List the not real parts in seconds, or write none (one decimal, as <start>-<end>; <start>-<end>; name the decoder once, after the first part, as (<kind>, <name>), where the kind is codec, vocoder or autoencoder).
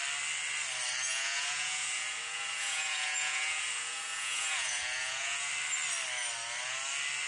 1.1-5.5 (vocoder, Vocos)